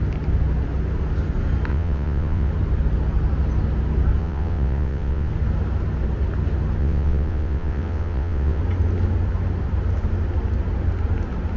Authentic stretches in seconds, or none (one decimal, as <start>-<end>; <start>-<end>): 0.0-1.7; 2.5-4.2; 5.3-6.8; 8.6-11.6